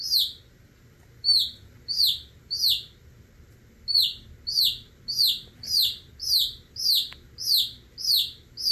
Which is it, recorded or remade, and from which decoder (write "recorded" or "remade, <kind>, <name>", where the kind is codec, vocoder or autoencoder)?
recorded